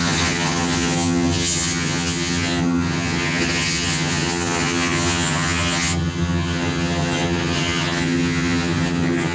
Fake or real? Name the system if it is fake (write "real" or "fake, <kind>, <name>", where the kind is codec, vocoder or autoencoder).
fake, vocoder, HiFi-GAN